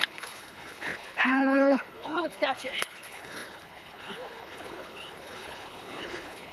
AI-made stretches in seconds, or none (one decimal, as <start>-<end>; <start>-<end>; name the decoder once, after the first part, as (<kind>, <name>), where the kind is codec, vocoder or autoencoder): 0.0-6.5 (codec, HILCodec)